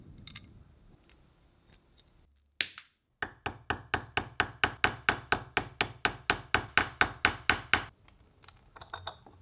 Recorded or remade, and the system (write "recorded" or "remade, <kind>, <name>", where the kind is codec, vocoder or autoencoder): recorded